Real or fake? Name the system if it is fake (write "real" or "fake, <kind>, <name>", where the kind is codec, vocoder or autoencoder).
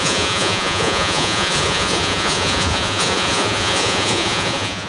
fake, vocoder, Vocos